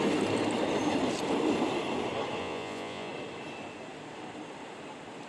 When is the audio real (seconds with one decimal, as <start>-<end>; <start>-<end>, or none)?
0.0-2.4; 3.1-5.3